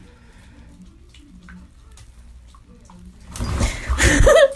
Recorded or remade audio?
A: recorded